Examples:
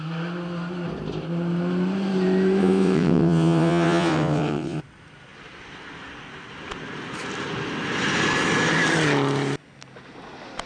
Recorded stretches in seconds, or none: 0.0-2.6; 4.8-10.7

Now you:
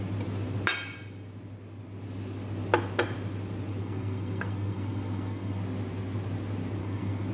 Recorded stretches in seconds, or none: 0.0-3.8; 5.6-6.8

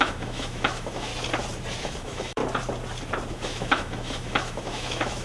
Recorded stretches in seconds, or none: 1.1-1.8; 2.4-3.3